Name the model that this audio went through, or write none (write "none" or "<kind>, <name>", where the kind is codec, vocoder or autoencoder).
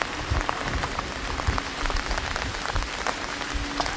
none